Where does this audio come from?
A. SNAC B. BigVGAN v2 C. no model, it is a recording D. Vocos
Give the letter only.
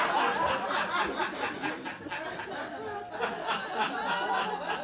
C